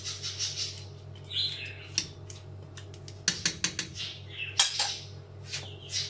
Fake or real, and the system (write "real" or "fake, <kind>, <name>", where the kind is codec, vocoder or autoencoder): real